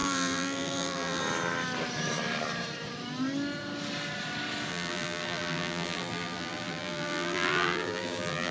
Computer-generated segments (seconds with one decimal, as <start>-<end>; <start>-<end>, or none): 0.0-1.2; 4.7-8.5